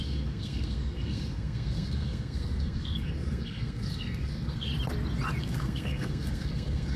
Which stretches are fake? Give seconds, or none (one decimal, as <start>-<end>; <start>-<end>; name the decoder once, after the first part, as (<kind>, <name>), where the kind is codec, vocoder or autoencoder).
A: 0.0-4.7 (codec, SNAC); 5.4-7.0